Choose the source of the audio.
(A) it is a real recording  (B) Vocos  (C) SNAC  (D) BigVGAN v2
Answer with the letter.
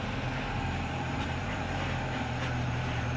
D